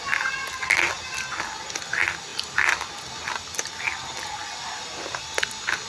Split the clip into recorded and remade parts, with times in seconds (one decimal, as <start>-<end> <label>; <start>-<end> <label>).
0.0-5.9 recorded